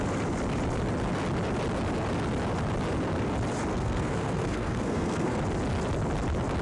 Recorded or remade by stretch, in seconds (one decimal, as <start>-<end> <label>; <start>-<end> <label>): 0.0-3.7 recorded; 3.7-5.4 remade; 5.4-6.6 recorded